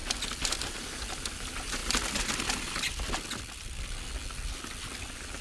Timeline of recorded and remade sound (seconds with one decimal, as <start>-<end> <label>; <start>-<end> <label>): 0.0-0.6 recorded; 0.6-1.8 remade; 1.8-5.0 recorded; 5.0-5.4 remade